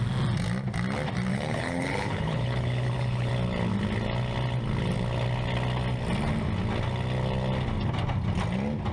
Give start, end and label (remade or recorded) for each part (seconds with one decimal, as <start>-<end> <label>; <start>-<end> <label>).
0.0-1.3 recorded; 1.3-3.3 remade; 3.3-8.9 recorded